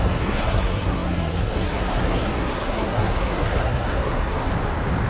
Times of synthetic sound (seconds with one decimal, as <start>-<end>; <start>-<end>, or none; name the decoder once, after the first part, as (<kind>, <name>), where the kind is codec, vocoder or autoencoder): 0.0-4.5 (codec, SNAC)